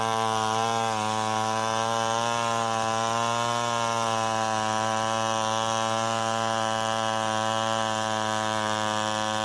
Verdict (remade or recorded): recorded